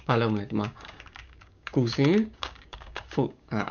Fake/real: fake